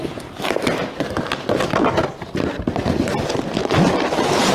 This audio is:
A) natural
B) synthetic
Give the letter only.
A